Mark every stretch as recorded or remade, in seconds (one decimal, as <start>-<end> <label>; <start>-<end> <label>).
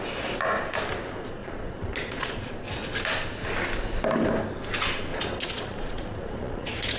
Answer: 0.0-1.4 recorded; 1.4-2.5 remade; 2.5-5.1 recorded; 5.1-7.0 remade